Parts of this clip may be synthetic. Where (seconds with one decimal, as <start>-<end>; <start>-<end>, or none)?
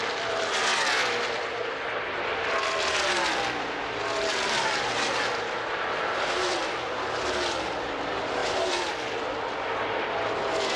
0.0-10.8